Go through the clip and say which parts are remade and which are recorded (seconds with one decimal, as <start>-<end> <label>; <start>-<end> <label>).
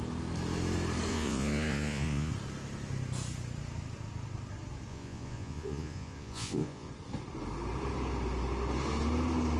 0.0-1.1 recorded; 1.1-2.3 remade; 2.3-4.9 recorded; 4.9-6.9 remade; 6.9-9.6 recorded